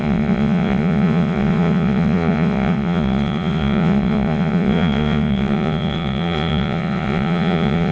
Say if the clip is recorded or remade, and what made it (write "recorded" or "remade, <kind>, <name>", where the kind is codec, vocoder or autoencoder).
remade, vocoder, Vocos